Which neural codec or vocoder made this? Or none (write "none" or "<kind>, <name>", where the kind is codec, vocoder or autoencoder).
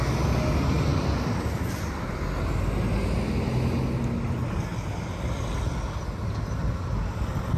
none